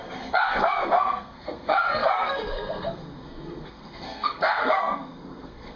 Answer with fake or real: fake